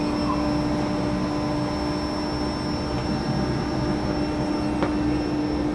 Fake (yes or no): no